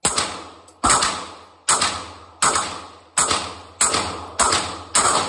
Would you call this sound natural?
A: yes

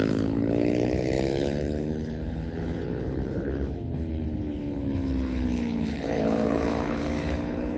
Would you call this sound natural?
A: no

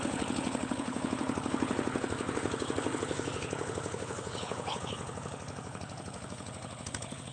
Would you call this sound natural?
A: no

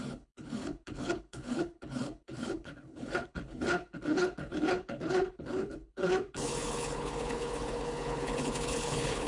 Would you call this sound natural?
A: no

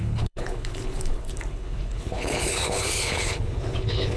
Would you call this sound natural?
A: no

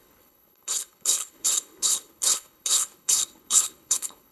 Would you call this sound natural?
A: no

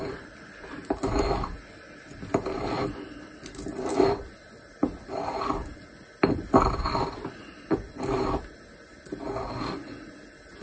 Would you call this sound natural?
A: yes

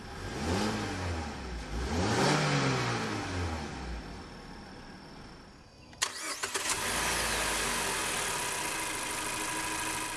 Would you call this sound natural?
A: yes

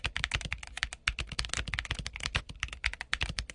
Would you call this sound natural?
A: yes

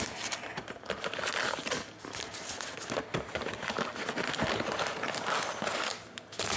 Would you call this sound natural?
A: yes